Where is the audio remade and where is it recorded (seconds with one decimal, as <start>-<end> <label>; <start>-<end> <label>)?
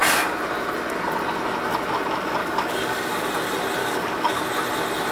0.0-2.4 recorded; 2.4-3.3 remade; 3.3-3.8 recorded; 3.8-4.4 remade; 4.4-5.1 recorded